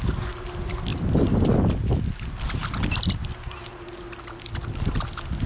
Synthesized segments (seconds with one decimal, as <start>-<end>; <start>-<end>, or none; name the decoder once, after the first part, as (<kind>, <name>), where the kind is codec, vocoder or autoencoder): 0.9-1.6 (vocoder, BigVGAN v2)